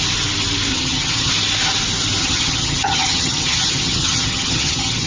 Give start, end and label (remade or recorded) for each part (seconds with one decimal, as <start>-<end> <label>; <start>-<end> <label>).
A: 0.0-0.7 recorded; 0.7-1.3 remade; 1.3-2.2 recorded; 2.2-5.1 remade